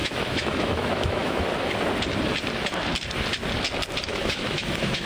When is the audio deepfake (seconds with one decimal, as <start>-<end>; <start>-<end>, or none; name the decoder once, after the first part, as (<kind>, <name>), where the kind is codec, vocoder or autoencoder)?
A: 0.0-1.5 (autoencoder, DAC-VAE); 4.1-5.1